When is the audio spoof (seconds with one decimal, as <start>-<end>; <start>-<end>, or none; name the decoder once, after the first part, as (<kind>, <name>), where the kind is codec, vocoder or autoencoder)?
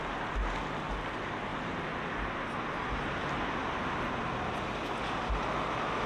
none